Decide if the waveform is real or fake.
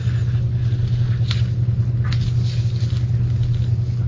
real